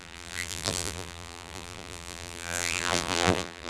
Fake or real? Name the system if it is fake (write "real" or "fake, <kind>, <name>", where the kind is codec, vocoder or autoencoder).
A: fake, vocoder, BigVGAN v2